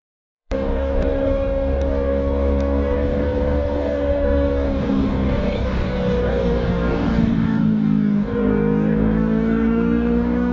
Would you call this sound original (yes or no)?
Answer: no